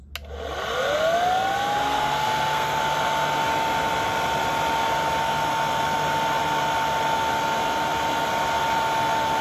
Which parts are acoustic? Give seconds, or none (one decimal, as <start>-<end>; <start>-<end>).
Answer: 0.0-1.8; 2.8-9.4